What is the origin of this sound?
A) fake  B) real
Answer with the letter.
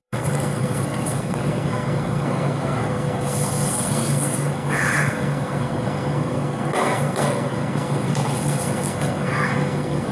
A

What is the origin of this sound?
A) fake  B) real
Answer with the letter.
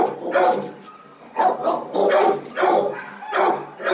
B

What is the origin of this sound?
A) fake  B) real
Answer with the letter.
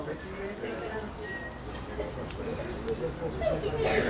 B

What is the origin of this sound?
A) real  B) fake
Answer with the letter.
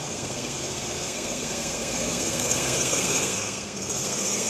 B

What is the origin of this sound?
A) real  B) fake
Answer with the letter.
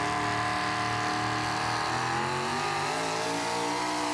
A